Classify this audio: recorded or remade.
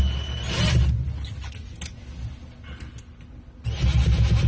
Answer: recorded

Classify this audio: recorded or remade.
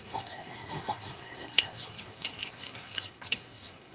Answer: remade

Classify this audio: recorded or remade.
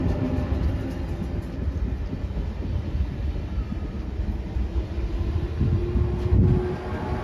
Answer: recorded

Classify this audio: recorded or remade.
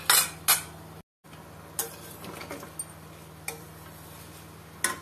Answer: recorded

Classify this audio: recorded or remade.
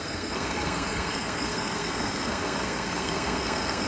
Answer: remade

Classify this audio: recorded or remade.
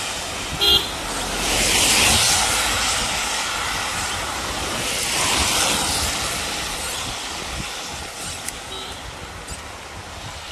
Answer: recorded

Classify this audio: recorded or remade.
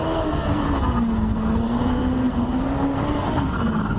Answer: remade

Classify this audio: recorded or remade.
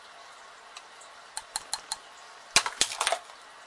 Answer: recorded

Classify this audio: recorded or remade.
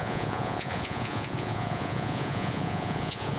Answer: remade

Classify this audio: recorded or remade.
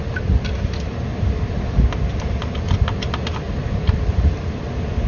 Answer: recorded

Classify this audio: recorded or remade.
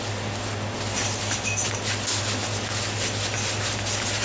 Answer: recorded